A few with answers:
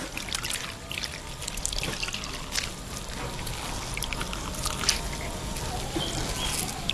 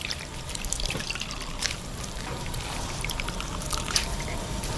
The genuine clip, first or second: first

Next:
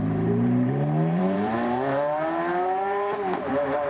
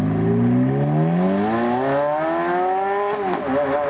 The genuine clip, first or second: second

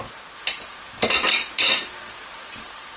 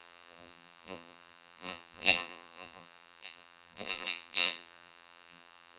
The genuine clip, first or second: first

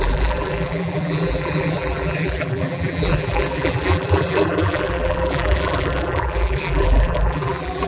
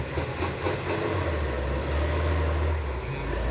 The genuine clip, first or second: second